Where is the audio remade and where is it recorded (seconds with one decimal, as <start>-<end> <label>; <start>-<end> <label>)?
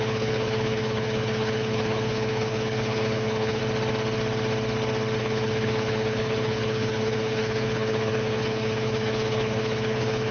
0.0-3.6 remade; 3.6-5.2 recorded; 5.2-10.3 remade